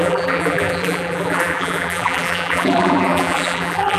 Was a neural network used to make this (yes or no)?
yes